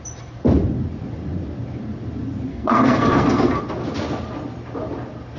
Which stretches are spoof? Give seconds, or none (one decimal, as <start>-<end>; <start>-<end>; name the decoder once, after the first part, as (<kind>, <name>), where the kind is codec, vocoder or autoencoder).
2.5-3.6 (codec, SNAC)